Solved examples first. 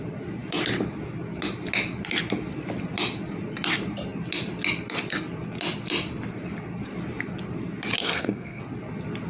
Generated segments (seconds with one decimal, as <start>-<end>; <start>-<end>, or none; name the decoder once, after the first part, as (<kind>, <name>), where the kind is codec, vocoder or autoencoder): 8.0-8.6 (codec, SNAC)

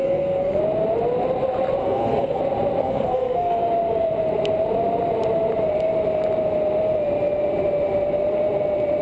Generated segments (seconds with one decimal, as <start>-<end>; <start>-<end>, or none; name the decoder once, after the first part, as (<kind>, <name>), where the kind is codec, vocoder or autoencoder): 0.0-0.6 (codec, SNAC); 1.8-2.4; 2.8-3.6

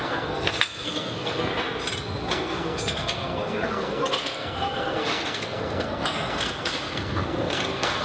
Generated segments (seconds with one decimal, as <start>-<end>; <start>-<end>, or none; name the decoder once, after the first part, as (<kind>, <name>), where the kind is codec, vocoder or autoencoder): 0.0-1.5 (codec, SNAC); 2.3-8.0